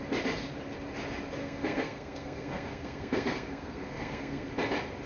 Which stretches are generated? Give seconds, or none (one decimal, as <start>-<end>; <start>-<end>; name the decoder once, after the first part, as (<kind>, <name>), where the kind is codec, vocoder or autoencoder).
1.4-4.5 (codec, SNAC)